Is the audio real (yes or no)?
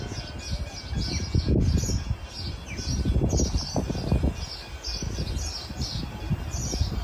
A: yes